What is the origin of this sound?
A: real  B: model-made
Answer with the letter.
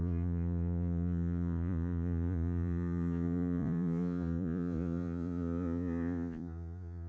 B